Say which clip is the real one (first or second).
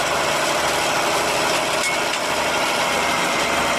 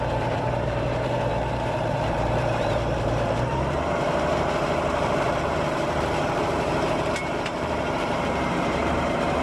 first